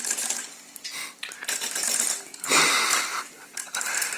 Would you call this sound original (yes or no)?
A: yes